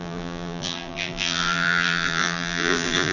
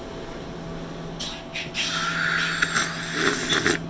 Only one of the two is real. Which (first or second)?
second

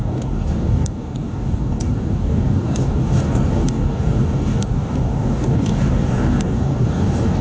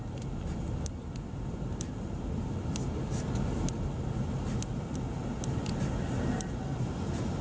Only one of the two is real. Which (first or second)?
second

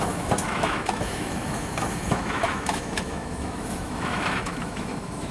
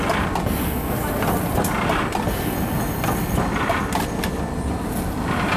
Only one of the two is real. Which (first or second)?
second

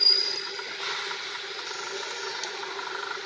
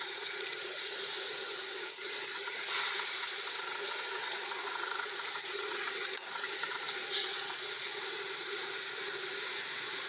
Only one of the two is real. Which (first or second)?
first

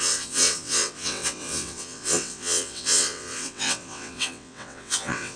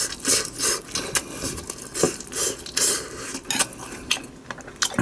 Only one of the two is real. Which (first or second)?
second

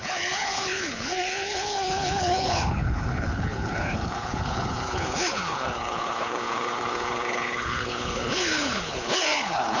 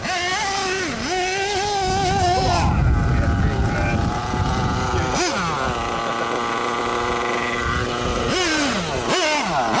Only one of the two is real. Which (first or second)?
second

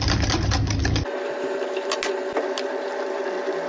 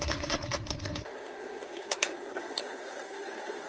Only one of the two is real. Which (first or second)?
first